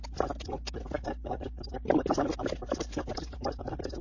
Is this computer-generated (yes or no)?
no